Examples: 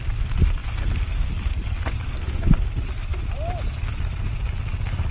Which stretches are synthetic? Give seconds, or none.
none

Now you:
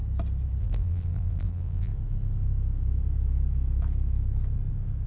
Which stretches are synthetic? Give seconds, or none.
0.6-1.9 (vocoder, BigVGAN v2)

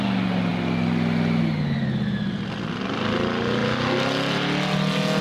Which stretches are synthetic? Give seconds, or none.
none

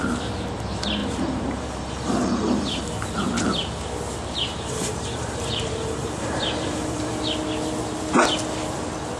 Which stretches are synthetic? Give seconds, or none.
1.0-2.8 (vocoder, BigVGAN v2); 4.5-7.1

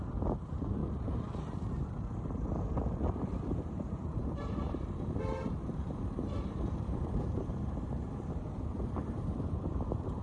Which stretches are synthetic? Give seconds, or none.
0.0-0.8 (vocoder, BigVGAN v2); 3.5-10.2

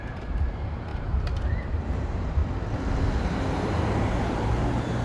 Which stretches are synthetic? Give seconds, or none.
0.0-2.4 (vocoder, BigVGAN v2); 3.2-5.0

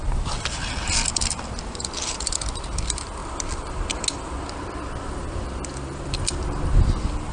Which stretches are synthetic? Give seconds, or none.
0.0-3.2 (vocoder, BigVGAN v2); 4.5-7.3

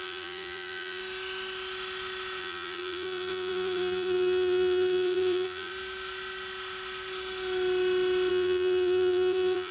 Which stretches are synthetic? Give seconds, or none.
0.0-1.0 (vocoder, BigVGAN v2); 2.4-5.7; 8.3-9.7